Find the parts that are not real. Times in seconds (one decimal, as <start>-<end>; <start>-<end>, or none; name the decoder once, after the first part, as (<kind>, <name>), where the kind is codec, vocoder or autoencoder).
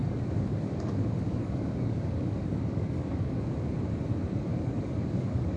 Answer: 0.0-3.4 (codec, DAC); 4.5-5.6